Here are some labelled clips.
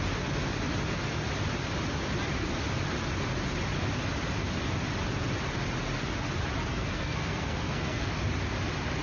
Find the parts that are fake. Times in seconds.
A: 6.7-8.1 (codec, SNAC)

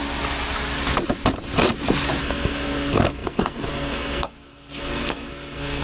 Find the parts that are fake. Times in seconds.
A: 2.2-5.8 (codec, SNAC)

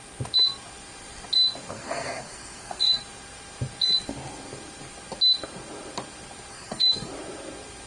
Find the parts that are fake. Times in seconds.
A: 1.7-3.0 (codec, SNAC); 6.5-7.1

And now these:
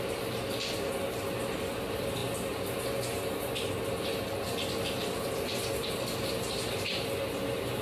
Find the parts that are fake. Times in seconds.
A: none